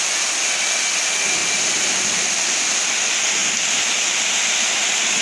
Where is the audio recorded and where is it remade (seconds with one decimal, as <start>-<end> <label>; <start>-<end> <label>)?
0.0-3.4 recorded; 3.4-4.0 remade; 4.0-5.2 recorded